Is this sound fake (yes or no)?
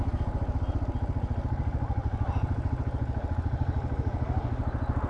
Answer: no